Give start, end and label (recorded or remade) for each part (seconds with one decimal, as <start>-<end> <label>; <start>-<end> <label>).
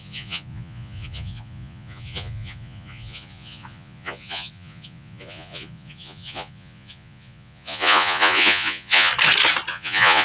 0.0-9.1 remade; 9.1-9.7 recorded; 9.7-10.2 remade